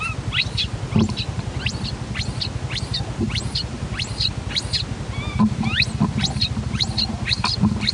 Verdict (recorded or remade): recorded